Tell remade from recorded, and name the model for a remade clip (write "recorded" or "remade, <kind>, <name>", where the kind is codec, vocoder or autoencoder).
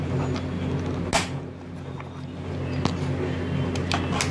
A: recorded